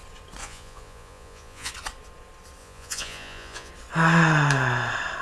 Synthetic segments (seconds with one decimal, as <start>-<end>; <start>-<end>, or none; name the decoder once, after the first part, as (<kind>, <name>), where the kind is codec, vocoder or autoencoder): 0.4-1.7 (vocoder, Vocos); 2.6-3.7